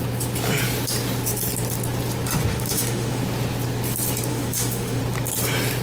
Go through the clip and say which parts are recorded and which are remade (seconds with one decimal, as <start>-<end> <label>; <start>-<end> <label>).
0.0-2.5 recorded; 2.5-3.2 remade; 3.2-4.3 recorded; 4.3-5.0 remade; 5.0-5.8 recorded